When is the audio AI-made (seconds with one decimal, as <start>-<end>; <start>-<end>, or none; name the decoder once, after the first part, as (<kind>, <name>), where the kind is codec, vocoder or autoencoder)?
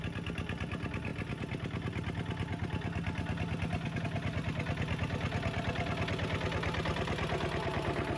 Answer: none